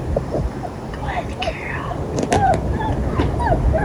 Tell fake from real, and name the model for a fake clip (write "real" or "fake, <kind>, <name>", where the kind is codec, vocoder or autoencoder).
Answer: real